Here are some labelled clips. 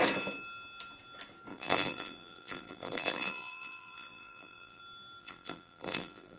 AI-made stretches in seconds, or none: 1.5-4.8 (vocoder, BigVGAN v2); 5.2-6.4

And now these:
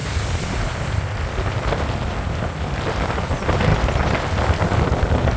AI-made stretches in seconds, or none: none